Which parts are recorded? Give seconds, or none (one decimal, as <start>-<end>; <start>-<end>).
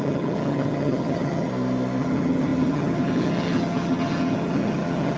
1.5-2.0